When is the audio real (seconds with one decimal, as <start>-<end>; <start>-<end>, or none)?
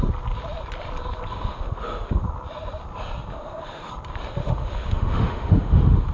0.0-1.3; 2.2-3.3; 3.9-4.4